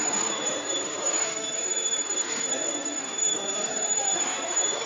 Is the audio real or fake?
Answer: fake